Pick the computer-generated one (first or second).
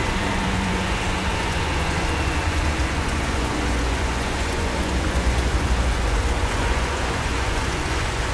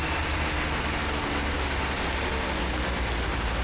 first